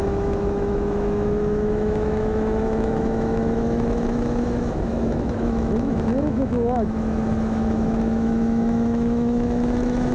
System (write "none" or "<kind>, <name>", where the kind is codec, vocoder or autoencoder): autoencoder, DAC-VAE